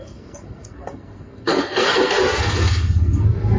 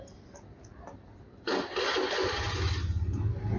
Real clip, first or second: second